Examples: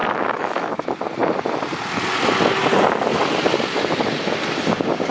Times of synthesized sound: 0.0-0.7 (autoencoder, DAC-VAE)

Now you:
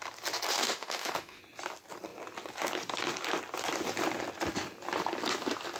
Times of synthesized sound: 0.5-1.4 (autoencoder, DAC-VAE)

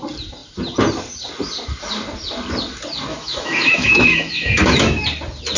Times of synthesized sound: 3.1-5.0 (autoencoder, DAC-VAE)